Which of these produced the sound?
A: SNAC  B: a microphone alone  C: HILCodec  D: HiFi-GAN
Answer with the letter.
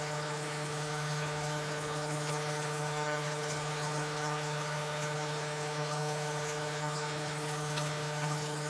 C